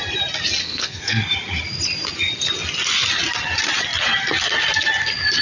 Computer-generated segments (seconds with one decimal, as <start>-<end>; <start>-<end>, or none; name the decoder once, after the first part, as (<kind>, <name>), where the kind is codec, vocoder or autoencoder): 0.6-1.3 (codec, SNAC)